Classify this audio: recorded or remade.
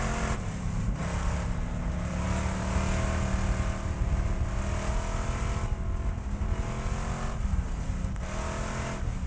recorded